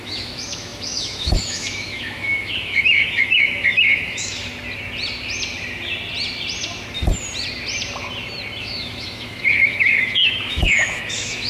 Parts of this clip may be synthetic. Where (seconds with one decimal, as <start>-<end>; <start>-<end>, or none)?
0.0-4.5; 8.6-11.5